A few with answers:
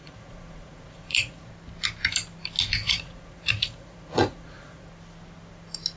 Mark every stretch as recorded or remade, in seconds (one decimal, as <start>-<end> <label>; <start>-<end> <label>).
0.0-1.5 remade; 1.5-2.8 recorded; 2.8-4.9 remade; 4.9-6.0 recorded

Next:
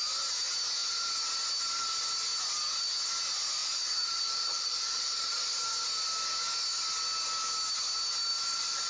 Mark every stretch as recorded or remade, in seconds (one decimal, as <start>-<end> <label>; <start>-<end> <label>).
0.0-3.6 recorded; 3.6-5.4 remade; 5.4-8.3 recorded; 8.3-8.9 remade

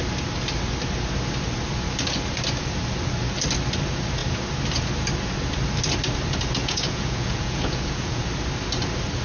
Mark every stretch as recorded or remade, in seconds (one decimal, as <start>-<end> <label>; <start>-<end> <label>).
0.0-6.6 recorded; 6.6-8.2 remade; 8.2-9.2 recorded